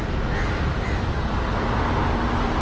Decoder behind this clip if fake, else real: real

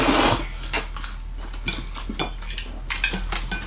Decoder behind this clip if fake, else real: real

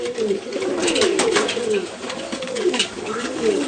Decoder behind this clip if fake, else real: fake, codec, DAC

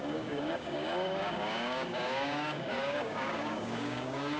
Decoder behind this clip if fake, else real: fake, codec, DAC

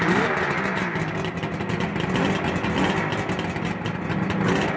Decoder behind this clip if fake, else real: real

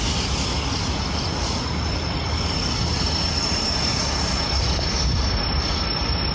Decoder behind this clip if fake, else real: real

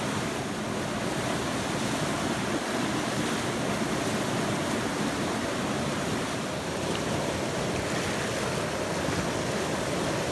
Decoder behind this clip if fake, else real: real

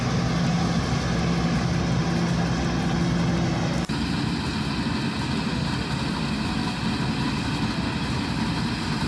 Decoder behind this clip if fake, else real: real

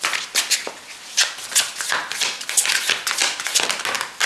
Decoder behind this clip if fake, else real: real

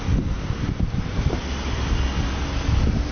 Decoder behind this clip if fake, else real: real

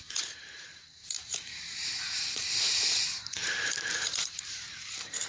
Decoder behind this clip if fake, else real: fake, vocoder, BigVGAN v2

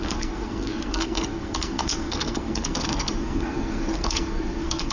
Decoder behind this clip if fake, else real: fake, codec, SNAC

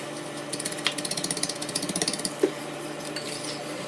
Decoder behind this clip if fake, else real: fake, vocoder, BigVGAN v2